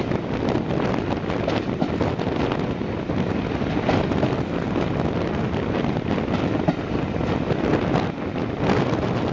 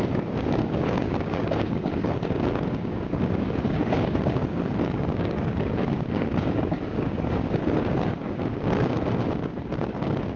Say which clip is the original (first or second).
first